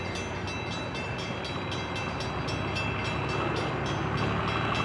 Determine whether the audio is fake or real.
real